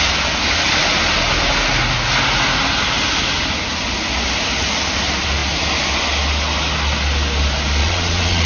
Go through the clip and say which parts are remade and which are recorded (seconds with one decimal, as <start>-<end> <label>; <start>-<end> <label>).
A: 0.0-7.8 recorded; 7.8-8.5 remade